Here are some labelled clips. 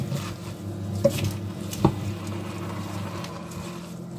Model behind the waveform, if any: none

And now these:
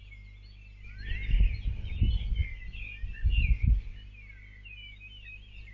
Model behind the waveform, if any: none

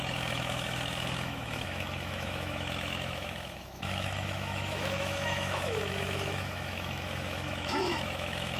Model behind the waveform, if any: autoencoder, DAC-VAE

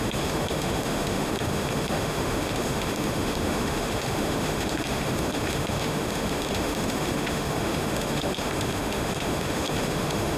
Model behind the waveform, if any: autoencoder, DAC-VAE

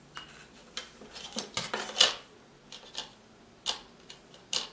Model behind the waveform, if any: none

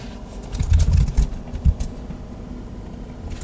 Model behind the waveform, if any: none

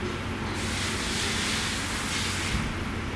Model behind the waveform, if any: none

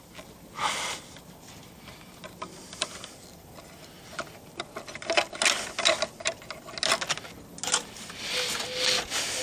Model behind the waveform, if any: none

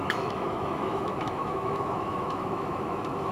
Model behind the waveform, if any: autoencoder, DAC-VAE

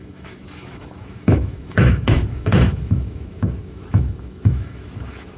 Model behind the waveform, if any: autoencoder, DAC-VAE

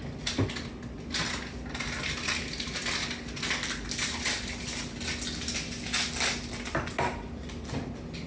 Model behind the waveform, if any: none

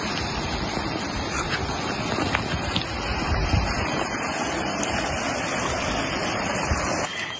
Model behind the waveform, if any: none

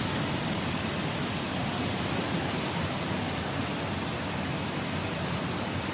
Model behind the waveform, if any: none